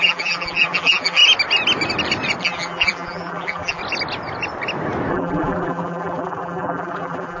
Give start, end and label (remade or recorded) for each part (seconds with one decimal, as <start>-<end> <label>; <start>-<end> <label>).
0.0-1.2 remade; 1.2-2.4 recorded; 2.4-3.8 remade; 3.8-5.1 recorded; 5.1-7.4 remade